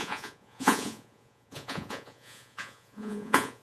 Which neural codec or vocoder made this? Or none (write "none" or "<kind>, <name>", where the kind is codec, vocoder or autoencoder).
vocoder, Vocos